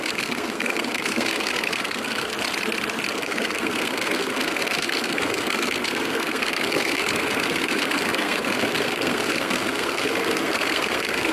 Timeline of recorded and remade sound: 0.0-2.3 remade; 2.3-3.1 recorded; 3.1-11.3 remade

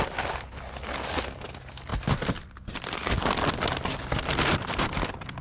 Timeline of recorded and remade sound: 0.0-5.4 recorded

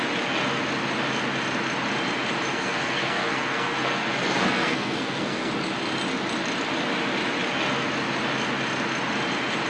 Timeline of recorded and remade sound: 0.0-2.5 recorded; 2.5-5.5 remade; 5.5-9.7 recorded

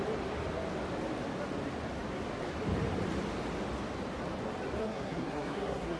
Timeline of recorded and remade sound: 0.0-4.8 recorded; 4.8-6.0 remade

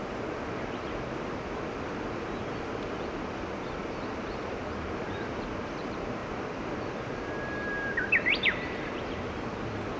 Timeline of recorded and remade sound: 0.0-10.0 recorded